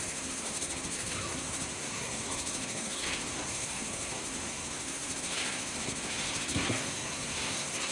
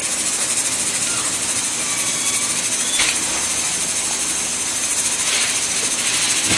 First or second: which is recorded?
second